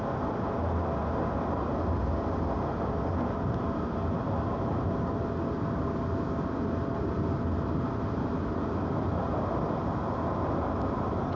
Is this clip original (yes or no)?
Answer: yes